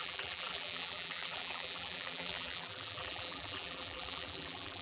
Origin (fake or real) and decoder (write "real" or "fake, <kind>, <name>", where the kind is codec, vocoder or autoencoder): fake, vocoder, BigVGAN v2